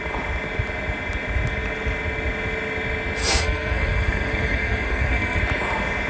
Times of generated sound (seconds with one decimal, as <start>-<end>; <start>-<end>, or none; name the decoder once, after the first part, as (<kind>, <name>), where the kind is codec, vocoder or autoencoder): 3.2-5.4 (codec, SNAC)